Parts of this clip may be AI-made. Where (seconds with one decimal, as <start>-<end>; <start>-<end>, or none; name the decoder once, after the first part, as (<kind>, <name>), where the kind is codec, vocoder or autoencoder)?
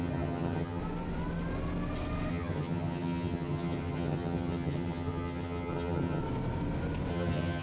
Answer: 0.0-0.8 (vocoder, HiFi-GAN); 2.3-6.2; 7.1-7.6